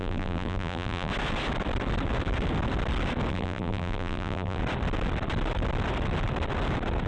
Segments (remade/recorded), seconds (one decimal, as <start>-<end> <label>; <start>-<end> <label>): 0.0-1.1 remade; 1.1-3.3 recorded; 3.3-4.6 remade; 4.6-7.1 recorded